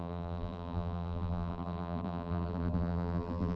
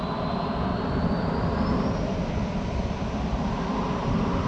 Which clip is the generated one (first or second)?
first